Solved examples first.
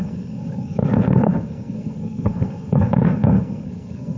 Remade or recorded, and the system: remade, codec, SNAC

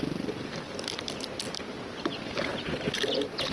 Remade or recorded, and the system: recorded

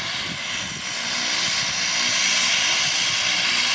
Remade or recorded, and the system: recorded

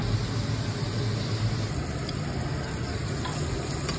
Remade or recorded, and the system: recorded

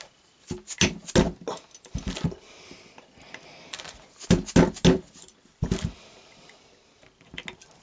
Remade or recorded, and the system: recorded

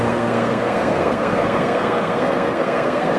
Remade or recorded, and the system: remade, codec, SNAC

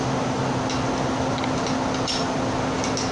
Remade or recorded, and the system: recorded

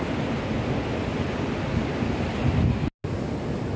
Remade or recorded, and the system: recorded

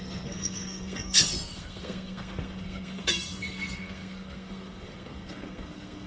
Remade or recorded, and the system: remade, codec, SNAC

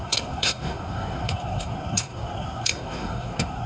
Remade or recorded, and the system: remade, codec, SNAC